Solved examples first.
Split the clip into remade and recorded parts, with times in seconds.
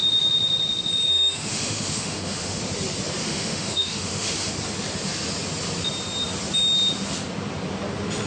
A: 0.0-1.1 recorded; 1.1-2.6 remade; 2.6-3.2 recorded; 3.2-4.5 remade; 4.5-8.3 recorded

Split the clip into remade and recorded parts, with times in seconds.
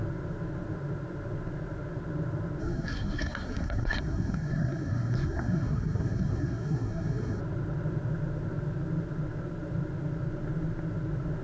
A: 0.0-2.6 recorded; 2.6-7.4 remade; 7.4-11.4 recorded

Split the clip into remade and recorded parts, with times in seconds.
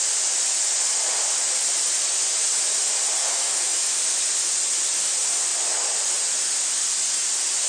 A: 0.0-3.2 recorded; 3.2-3.9 remade; 3.9-7.7 recorded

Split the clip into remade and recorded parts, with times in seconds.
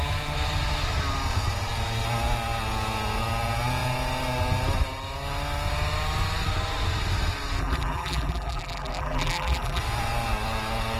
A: 0.0-7.6 recorded; 7.6-9.8 remade; 9.8-11.0 recorded